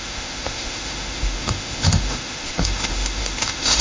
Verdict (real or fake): fake